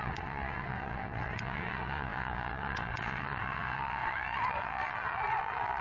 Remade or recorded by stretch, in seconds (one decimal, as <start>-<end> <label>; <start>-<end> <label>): 0.0-5.8 remade